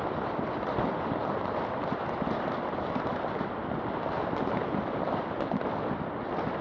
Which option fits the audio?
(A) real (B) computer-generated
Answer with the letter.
A